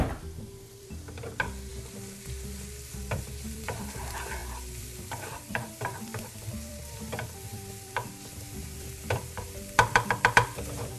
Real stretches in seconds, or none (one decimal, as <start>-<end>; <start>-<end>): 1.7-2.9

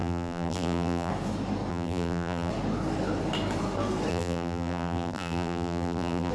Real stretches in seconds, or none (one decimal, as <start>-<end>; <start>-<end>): 1.1-1.7; 2.5-4.1

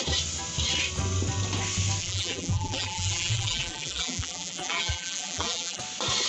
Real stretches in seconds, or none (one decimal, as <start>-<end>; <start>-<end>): 0.0-2.0; 5.8-6.3